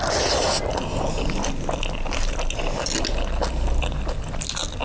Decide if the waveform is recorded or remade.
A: recorded